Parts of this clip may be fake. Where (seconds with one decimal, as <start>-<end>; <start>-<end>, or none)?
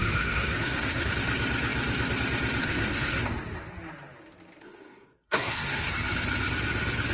0.0-1.1; 2.6-3.2; 4.6-5.9